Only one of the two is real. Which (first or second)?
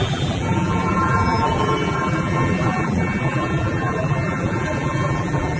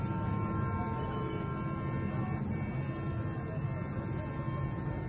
second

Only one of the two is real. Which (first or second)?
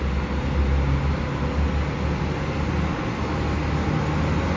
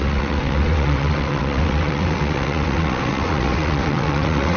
first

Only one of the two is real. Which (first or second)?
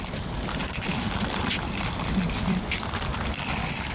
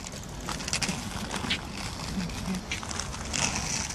second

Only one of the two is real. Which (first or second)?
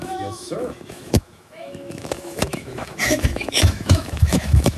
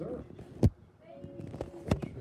second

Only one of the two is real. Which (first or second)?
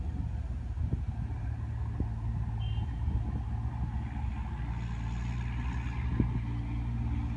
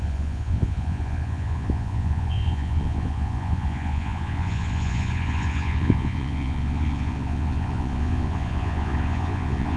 first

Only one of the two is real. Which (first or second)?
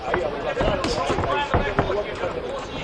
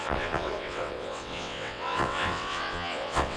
first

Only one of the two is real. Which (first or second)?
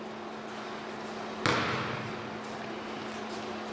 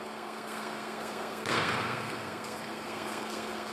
first